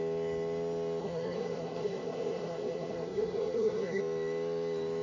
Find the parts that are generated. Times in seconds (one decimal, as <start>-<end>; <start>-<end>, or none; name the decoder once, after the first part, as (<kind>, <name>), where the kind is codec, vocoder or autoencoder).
1.0-4.0 (codec, SNAC)

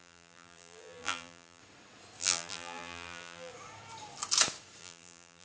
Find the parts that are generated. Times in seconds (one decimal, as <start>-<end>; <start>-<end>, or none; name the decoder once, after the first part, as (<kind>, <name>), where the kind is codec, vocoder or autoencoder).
0.0-1.6 (vocoder, BigVGAN v2); 2.2-3.5; 4.8-5.4

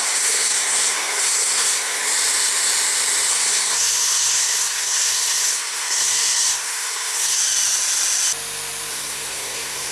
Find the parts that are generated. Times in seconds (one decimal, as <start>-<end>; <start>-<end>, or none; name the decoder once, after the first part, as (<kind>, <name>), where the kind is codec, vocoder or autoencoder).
0.0-2.0 (codec, SNAC); 3.3-7.4; 8.9-9.9

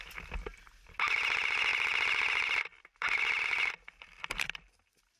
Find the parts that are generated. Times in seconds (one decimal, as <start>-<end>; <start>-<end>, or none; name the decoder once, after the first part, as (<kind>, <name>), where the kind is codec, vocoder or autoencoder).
1.7-3.4 (vocoder, BigVGAN v2)

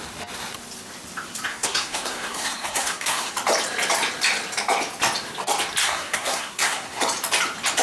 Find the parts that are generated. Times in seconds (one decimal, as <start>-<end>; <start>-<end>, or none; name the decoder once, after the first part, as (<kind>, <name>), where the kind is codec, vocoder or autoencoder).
1.5-3.3 (codec, SNAC); 5.8-7.0

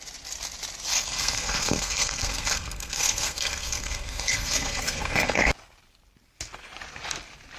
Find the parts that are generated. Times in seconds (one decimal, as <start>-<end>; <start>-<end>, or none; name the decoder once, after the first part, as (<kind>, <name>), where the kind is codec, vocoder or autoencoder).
0.9-5.5 (codec, SNAC)

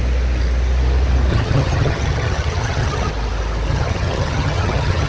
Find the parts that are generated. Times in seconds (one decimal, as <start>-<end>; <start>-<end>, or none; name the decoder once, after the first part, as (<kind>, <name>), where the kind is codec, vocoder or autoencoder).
1.3-3.1 (vocoder, HiFi-GAN); 3.7-5.1

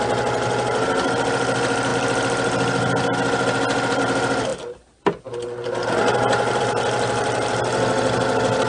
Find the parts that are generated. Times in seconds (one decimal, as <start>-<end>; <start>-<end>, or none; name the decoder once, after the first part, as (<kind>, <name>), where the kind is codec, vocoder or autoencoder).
none